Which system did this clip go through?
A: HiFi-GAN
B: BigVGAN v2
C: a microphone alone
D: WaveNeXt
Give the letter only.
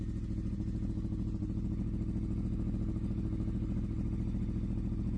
C